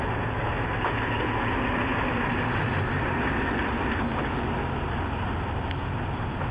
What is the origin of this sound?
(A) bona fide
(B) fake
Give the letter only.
A